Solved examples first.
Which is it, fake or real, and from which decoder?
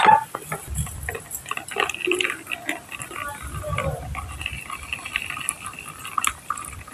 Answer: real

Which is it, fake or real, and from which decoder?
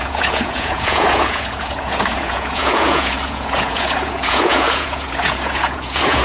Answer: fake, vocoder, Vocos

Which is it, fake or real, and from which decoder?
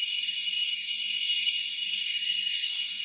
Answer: fake, codec, SNAC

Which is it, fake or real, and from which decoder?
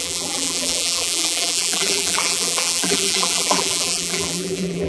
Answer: fake, vocoder, BigVGAN v2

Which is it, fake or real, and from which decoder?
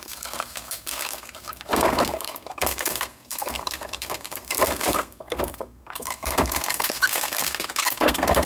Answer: fake, codec, SNAC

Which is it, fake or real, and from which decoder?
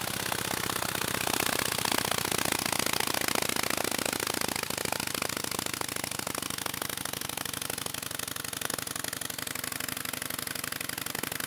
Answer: real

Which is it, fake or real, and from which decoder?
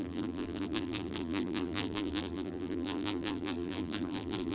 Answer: fake, vocoder, BigVGAN v2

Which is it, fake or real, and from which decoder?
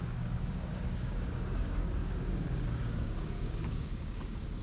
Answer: fake, codec, DAC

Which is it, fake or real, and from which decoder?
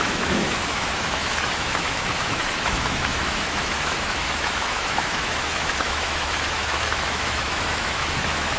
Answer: fake, autoencoder, DAC-VAE